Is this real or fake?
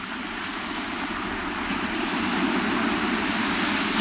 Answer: real